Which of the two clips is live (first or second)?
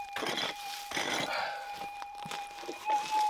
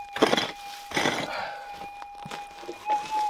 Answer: second